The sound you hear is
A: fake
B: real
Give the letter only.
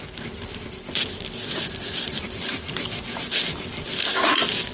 B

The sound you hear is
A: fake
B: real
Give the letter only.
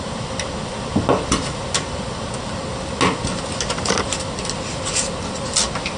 B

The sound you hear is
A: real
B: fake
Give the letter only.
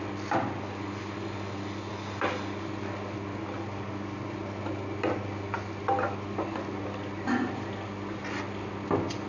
A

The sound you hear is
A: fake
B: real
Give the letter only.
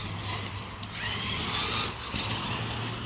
B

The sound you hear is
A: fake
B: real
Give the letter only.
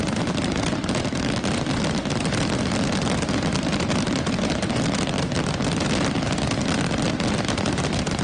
B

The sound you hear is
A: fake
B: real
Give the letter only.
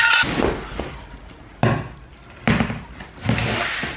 B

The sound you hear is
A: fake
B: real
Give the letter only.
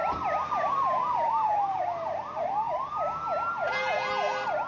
B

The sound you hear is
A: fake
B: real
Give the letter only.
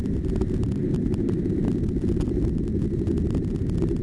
B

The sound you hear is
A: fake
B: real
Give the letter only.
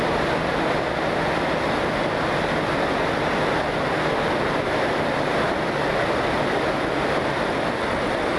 B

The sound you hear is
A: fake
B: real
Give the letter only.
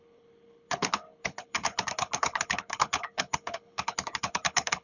A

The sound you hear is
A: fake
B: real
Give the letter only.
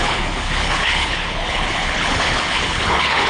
A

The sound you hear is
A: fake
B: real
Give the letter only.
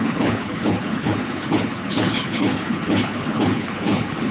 A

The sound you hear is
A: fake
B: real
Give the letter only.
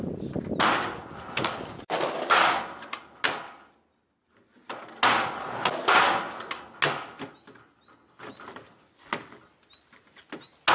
B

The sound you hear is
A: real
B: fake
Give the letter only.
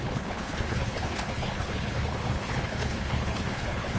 B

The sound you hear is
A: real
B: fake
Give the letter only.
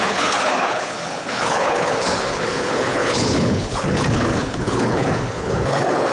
B